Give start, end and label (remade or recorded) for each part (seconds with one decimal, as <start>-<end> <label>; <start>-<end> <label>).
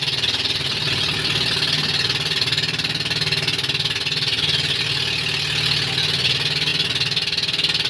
0.0-7.9 recorded